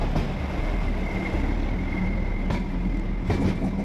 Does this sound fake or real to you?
real